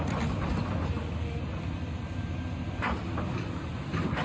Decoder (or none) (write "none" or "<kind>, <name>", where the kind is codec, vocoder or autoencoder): none